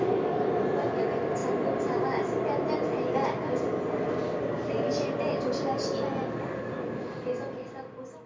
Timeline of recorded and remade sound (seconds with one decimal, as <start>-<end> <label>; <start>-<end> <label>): 0.0-8.3 recorded

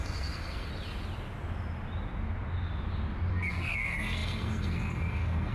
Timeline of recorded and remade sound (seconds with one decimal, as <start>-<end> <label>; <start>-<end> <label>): 0.0-0.7 remade; 0.7-3.3 recorded; 3.3-5.5 remade

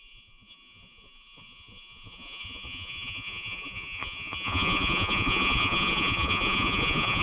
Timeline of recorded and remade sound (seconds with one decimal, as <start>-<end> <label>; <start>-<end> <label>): 0.0-7.2 remade

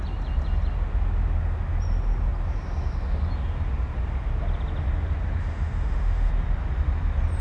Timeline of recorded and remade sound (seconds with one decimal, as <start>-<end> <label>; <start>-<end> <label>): 0.0-5.4 recorded; 5.4-6.3 remade; 6.3-7.4 recorded

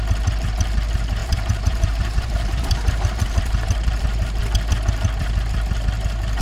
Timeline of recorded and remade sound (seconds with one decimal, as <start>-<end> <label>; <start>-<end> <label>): 0.0-1.2 recorded; 1.2-4.4 remade; 4.4-6.4 recorded

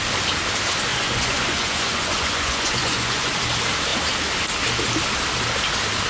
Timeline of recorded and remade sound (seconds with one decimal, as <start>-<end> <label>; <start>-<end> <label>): 0.0-0.9 recorded; 0.9-3.3 remade; 3.3-6.1 recorded

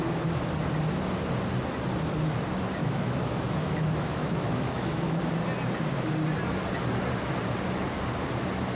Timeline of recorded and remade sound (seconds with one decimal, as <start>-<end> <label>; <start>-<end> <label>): 0.0-2.8 recorded; 2.8-5.2 remade; 5.2-8.7 recorded

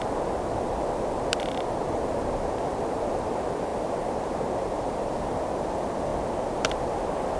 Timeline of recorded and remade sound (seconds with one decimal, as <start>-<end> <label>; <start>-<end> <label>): 0.0-7.4 recorded